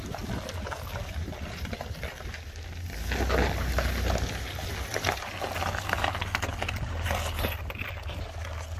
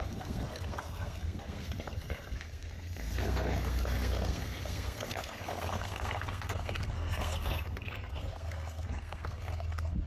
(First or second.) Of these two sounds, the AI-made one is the second